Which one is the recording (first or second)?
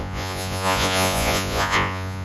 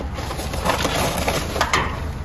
second